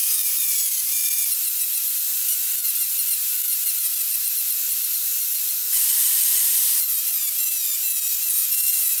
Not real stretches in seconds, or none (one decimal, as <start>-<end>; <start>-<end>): 0.0-2.5; 2.9-4.1; 5.0-5.6